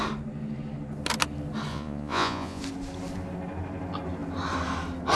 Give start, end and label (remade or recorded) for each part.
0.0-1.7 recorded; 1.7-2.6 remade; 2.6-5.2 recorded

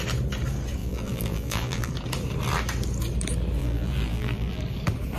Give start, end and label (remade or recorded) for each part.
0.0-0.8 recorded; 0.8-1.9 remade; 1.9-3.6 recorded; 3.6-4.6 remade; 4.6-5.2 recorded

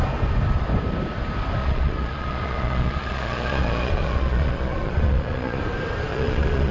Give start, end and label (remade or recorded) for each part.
0.0-1.6 recorded; 1.6-5.6 remade; 5.6-6.1 recorded; 6.1-6.7 remade

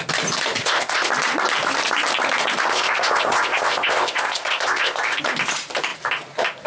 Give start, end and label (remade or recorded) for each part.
0.0-0.6 recorded; 0.6-1.1 remade; 1.1-2.7 recorded; 2.7-5.2 remade; 5.2-6.7 recorded

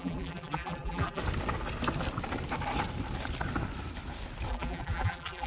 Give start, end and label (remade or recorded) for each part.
0.0-1.2 remade; 1.2-4.5 recorded; 4.5-5.5 remade

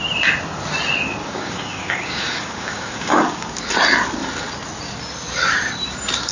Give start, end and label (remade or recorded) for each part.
0.0-1.2 recorded; 1.2-3.5 remade; 3.5-6.3 recorded

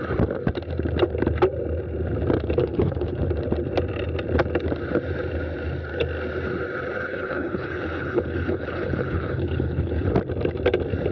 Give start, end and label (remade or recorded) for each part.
0.0-2.6 recorded; 2.6-3.2 remade; 3.2-7.1 recorded; 7.1-10.1 remade; 10.1-11.1 recorded